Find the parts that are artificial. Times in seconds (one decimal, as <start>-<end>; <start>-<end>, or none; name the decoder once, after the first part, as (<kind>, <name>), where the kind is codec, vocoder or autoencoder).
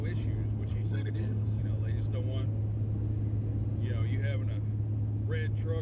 0.7-1.6 (codec, SNAC)